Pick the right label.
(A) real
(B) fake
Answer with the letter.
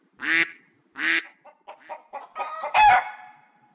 A